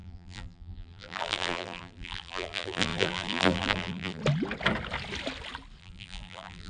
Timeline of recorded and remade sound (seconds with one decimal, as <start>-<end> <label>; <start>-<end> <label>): 0.0-4.2 remade; 4.2-5.8 recorded; 5.8-6.7 remade